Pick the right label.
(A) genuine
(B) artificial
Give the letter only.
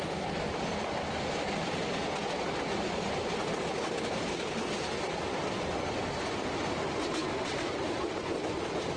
A